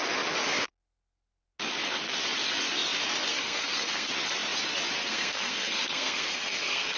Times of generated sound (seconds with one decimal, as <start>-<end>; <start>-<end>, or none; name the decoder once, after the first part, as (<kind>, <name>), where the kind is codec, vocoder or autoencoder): 3.3-4.1 (codec, SNAC); 5.0-7.0